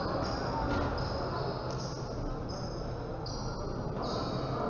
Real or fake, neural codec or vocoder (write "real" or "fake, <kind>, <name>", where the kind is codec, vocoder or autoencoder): real